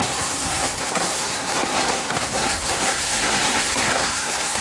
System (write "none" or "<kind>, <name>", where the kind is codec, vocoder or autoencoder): codec, SNAC